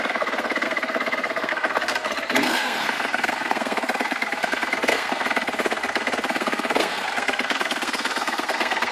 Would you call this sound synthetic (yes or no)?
yes